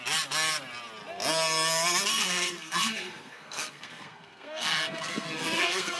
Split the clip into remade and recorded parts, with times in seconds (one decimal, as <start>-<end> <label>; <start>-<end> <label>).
0.0-2.1 recorded; 2.1-6.0 remade